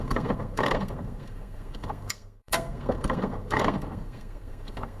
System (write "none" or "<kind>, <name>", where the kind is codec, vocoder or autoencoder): codec, SNAC